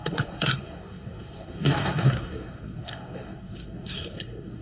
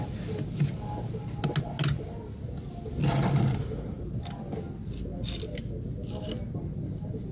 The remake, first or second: first